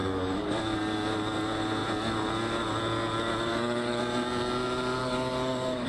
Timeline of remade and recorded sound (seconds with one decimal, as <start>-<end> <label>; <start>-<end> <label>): 0.0-0.6 remade; 0.6-3.5 recorded; 3.5-4.0 remade; 4.0-5.0 recorded; 5.0-5.9 remade